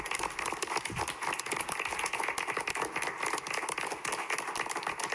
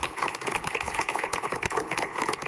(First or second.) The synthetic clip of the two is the second